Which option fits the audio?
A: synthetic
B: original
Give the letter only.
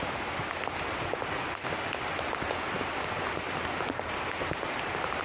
B